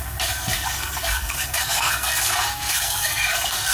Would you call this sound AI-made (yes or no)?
yes